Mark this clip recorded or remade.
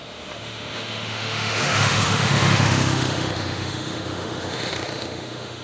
remade